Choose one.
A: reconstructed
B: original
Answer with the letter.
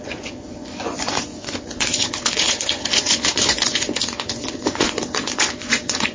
A